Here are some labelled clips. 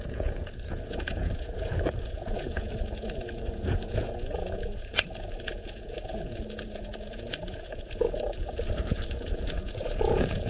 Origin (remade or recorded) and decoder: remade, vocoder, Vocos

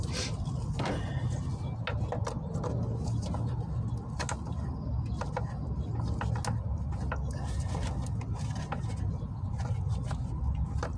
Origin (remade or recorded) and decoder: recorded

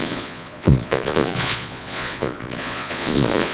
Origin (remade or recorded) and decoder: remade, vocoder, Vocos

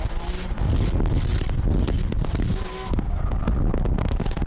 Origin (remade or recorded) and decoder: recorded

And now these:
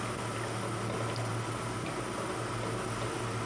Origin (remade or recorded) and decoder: recorded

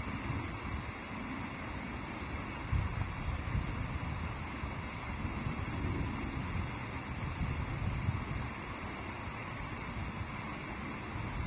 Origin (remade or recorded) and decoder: recorded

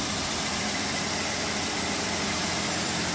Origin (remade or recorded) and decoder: recorded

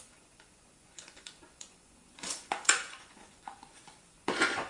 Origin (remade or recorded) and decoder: remade, vocoder, Vocos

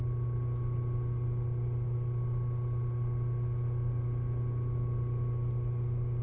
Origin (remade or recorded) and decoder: recorded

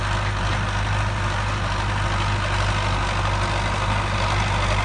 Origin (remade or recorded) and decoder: recorded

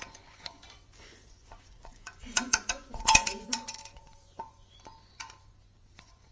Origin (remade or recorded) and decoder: remade, vocoder, Vocos